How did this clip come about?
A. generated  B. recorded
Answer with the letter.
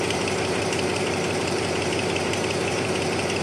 A